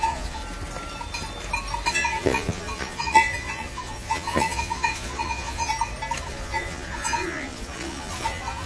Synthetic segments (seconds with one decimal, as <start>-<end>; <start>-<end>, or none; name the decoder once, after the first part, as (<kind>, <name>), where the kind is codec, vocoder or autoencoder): 0.0-0.4 (vocoder, Vocos); 1.9-5.7; 6.3-8.7